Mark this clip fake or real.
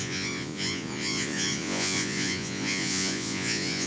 fake